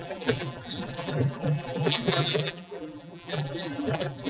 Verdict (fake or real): fake